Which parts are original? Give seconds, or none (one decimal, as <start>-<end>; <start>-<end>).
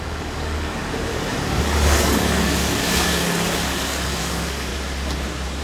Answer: 4.7-5.6